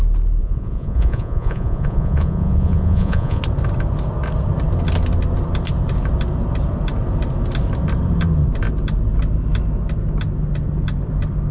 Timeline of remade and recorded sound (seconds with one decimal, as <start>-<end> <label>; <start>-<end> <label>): 0.0-0.4 recorded; 0.4-3.4 remade; 3.4-11.5 recorded